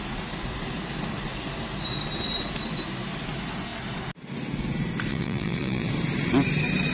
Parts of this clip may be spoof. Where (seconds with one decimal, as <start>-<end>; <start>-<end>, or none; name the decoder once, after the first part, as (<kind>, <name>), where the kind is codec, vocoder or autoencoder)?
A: 5.1-5.9 (vocoder, Vocos)